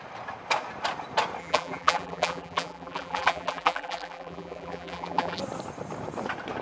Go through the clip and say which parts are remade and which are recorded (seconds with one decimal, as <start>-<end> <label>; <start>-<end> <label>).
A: 0.0-1.4 recorded; 1.4-5.4 remade; 5.4-6.6 recorded